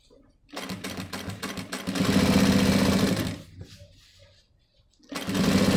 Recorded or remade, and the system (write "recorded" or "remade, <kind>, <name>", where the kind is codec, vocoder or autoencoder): recorded